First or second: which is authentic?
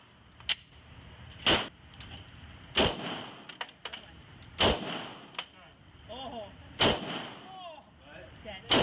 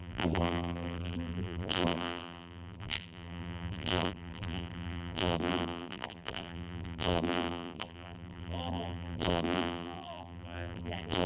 first